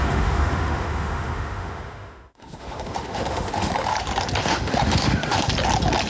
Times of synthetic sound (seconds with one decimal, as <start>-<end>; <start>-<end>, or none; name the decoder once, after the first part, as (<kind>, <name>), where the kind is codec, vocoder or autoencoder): 0.0-3.7 (autoencoder, DAC-VAE); 4.4-5.5